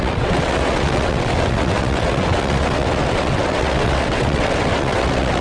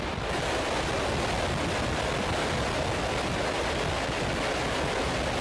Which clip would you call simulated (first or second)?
first